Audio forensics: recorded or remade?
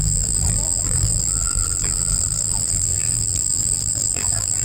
remade